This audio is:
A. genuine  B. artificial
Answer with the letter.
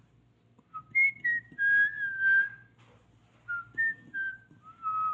A